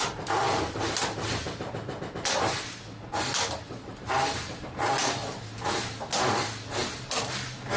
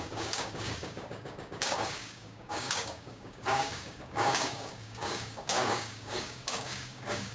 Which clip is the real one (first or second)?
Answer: first